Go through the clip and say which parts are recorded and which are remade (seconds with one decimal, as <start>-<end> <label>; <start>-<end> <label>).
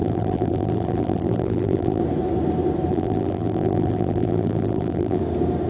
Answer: 0.0-2.0 remade; 2.0-2.9 recorded; 2.9-5.2 remade; 5.2-5.7 recorded